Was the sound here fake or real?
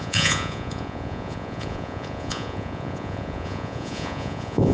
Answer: fake